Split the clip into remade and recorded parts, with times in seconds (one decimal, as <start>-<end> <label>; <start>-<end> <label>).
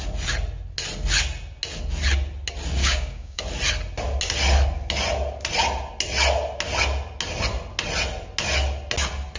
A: 0.0-2.8 recorded; 2.8-3.4 remade; 3.4-9.4 recorded